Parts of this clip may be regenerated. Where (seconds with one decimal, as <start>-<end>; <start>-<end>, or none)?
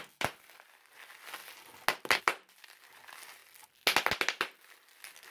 none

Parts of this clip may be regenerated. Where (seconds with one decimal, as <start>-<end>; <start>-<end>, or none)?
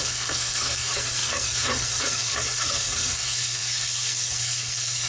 0.0-5.1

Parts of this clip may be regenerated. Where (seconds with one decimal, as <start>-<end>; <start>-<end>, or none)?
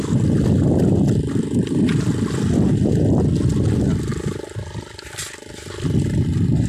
none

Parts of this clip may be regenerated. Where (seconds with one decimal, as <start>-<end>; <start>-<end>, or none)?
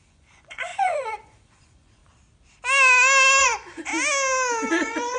0.0-2.0; 3.4-3.9; 4.7-5.2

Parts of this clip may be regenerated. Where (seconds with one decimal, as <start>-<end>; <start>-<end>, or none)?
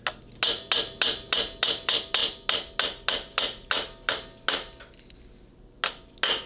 none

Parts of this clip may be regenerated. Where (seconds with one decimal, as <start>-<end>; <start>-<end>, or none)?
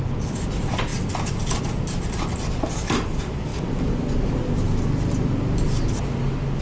0.0-3.5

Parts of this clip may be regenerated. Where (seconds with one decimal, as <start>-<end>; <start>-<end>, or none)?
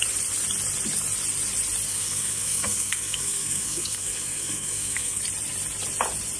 1.9-5.2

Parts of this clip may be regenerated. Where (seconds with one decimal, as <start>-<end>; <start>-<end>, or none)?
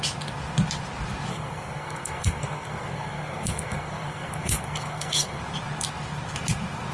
1.3-5.4